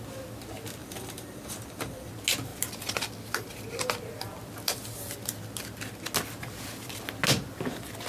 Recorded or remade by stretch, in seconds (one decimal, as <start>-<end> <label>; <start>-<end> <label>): 0.0-0.8 recorded; 0.8-2.1 remade; 2.1-8.1 recorded